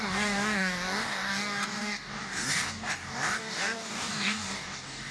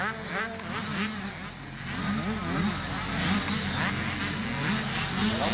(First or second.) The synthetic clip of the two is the first